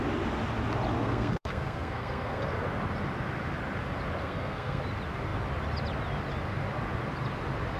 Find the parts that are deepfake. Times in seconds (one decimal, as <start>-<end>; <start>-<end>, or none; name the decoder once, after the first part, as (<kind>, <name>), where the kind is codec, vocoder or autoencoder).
1.0-2.4 (codec, SNAC); 4.2-4.8